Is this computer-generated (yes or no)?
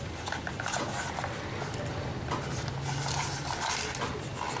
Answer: no